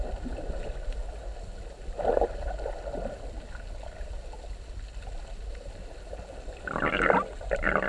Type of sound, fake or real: real